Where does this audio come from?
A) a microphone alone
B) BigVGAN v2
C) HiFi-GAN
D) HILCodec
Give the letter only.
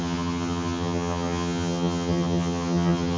C